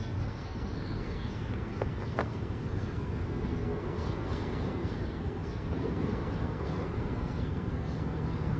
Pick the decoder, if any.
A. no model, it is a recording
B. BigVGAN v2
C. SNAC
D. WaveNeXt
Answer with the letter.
C